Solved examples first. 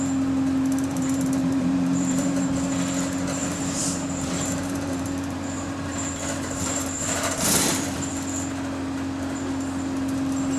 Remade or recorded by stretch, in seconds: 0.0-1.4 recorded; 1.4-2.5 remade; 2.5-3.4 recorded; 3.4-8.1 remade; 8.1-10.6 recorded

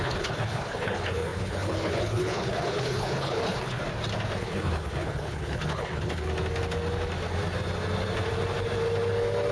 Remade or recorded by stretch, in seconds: 0.0-3.8 remade; 3.8-4.4 recorded; 4.4-6.3 remade; 6.3-9.5 recorded

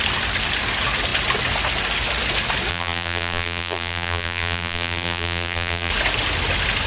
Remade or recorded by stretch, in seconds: 0.0-2.7 recorded; 2.7-5.9 remade; 5.9-6.9 recorded